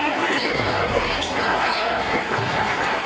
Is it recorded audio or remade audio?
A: remade